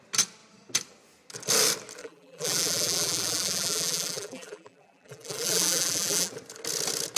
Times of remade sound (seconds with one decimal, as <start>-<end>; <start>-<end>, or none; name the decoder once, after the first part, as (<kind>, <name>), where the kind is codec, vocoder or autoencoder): 2.0-6.3 (vocoder, BigVGAN v2)